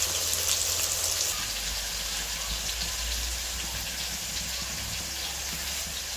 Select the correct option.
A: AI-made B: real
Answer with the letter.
B